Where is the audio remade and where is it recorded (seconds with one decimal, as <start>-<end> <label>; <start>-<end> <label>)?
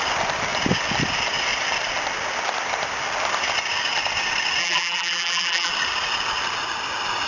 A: 0.0-4.6 recorded; 4.6-5.7 remade; 5.7-7.3 recorded